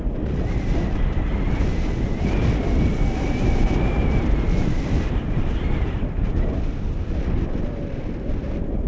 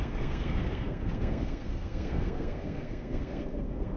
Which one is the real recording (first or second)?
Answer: first